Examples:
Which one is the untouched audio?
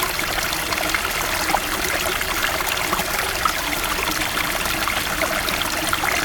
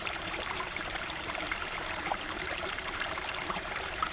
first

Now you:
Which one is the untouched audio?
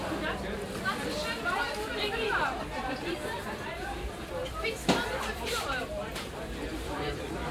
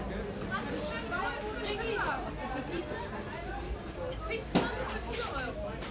second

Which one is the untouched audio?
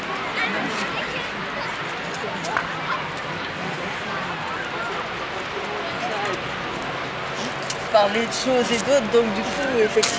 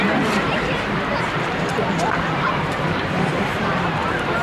first